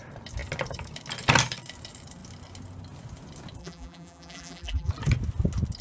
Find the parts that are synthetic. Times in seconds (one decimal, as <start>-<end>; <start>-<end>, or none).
3.6-4.9